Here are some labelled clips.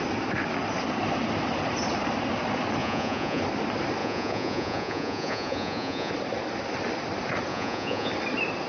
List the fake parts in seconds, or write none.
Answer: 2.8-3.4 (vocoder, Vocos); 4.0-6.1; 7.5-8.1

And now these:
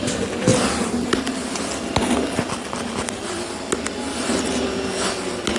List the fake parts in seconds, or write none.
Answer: none

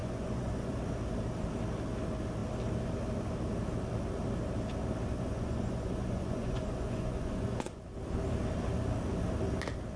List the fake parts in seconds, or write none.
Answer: 0.0-0.7 (vocoder, Vocos); 5.1-7.8

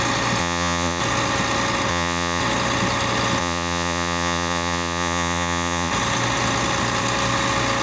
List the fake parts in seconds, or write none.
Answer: 0.4-1.0 (vocoder, Vocos); 1.9-2.4; 3.4-5.9

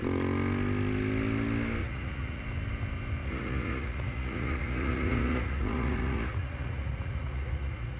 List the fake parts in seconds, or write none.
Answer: 1.8-2.4 (vocoder, Vocos); 3.2-8.0